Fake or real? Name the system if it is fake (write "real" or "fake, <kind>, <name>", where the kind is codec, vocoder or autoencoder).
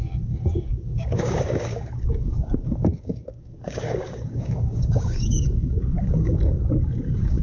fake, codec, DAC